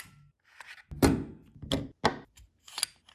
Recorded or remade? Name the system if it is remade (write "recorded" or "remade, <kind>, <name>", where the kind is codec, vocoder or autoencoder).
recorded